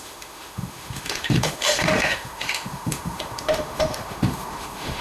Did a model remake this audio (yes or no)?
yes